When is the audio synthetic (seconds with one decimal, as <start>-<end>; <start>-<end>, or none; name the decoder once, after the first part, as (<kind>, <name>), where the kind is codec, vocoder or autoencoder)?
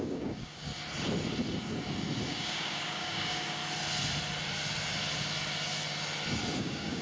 0.0-0.7 (codec, DAC); 2.3-3.6; 6.6-7.0